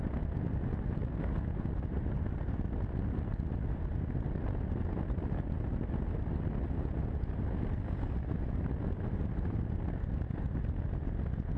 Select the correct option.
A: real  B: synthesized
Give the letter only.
A